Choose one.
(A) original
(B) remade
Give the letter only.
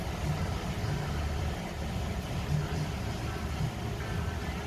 A